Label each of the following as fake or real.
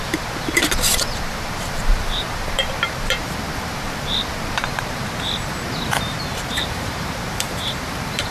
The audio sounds fake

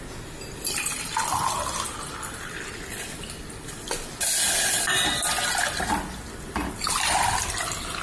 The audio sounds real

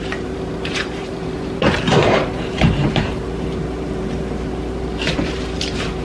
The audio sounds fake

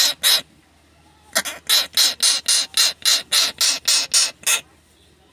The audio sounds real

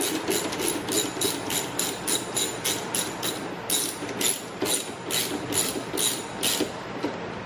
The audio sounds real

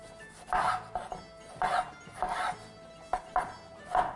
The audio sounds real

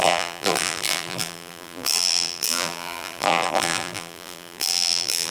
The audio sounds fake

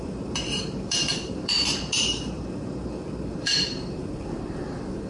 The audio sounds fake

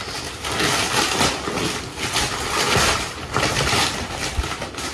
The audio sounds real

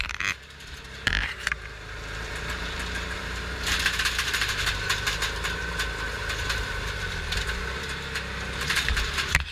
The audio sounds fake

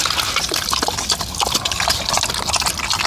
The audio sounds real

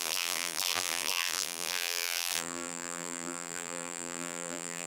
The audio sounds fake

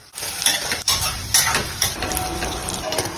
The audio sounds real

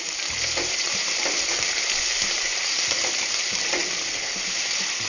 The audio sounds fake